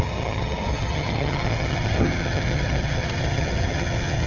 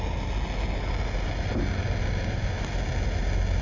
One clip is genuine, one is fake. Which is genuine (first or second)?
second